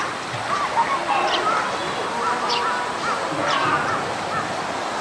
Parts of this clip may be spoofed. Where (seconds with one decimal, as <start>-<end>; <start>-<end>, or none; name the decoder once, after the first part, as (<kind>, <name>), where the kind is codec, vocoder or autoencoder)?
none